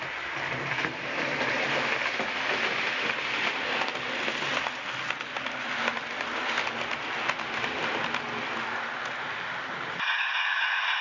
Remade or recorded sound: recorded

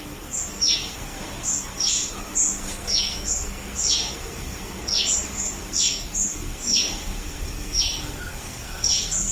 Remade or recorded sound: remade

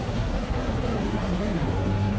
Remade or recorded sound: remade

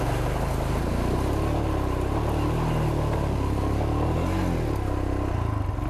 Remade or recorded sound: recorded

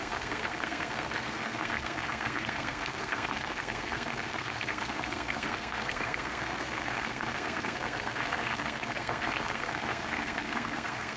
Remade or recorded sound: remade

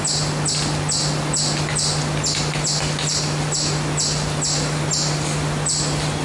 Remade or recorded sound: recorded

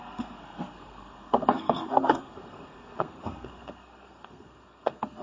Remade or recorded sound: remade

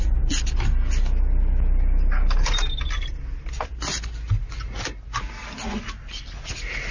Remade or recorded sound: recorded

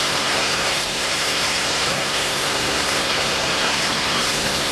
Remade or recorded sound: remade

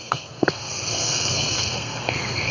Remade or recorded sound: remade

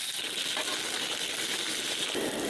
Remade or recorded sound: recorded